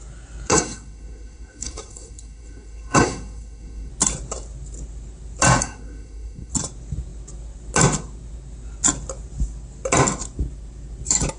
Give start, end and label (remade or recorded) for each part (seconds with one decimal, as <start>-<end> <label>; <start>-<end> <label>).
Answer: 0.0-0.5 recorded; 0.5-3.9 remade; 3.9-5.6 recorded; 5.6-6.5 remade; 6.5-11.4 recorded